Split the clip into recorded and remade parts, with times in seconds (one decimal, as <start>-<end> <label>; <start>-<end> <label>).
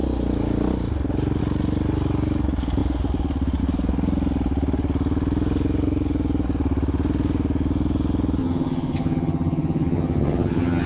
0.0-8.4 recorded; 8.4-10.9 remade